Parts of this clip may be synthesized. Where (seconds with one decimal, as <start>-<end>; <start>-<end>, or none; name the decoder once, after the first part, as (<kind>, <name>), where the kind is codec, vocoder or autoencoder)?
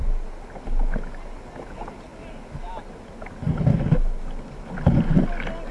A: none